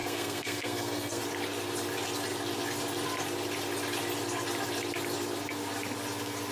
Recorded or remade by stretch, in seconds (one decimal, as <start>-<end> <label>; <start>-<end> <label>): 0.0-1.2 remade; 1.2-6.5 recorded